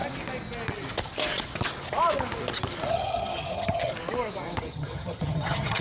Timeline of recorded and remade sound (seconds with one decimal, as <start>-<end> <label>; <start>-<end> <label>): 0.0-2.9 recorded; 2.9-3.9 remade; 3.9-4.6 recorded; 4.6-5.8 remade